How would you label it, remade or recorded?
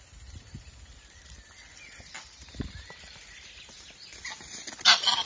recorded